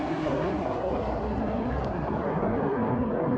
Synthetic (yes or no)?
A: yes